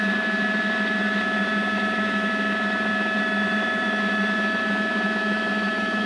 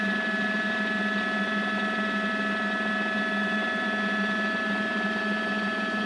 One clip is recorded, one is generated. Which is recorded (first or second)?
second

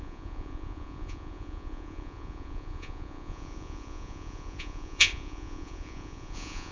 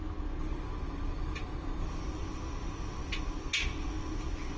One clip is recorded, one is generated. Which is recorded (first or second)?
second